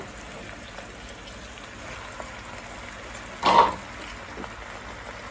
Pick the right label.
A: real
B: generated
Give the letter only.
A